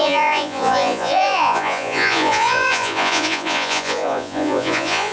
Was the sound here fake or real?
fake